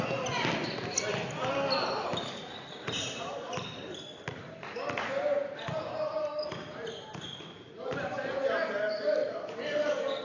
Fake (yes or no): no